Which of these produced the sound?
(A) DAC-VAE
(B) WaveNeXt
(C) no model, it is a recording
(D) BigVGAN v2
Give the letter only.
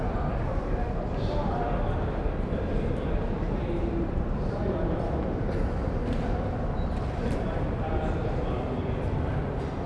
D